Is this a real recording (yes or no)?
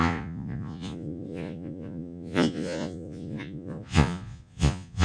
no